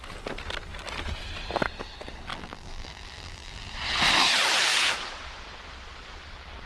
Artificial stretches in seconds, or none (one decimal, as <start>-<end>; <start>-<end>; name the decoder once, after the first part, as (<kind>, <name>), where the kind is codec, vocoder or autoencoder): 2.3-3.7 (vocoder, BigVGAN v2)